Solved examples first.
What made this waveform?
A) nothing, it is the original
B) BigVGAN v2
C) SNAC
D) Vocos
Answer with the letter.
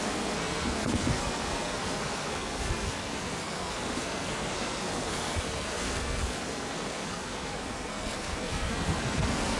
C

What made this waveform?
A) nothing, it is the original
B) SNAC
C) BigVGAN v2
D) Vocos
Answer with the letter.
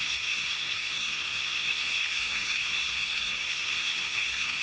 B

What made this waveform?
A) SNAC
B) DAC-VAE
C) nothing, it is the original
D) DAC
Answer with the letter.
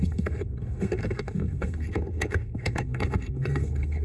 A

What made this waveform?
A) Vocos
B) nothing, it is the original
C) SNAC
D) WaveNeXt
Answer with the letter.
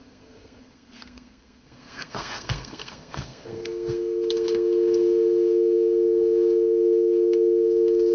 C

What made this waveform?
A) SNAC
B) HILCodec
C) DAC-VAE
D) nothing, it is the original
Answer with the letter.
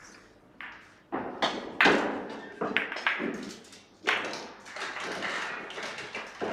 D